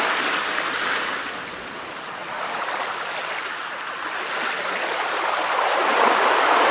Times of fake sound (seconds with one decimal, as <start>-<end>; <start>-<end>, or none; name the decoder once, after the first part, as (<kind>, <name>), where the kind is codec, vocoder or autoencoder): none